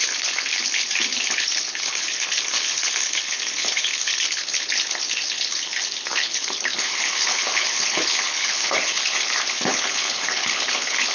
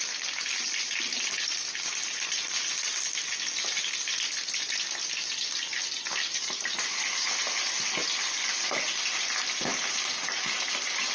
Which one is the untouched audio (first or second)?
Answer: second